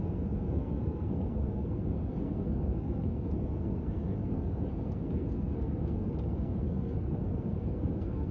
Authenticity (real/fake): fake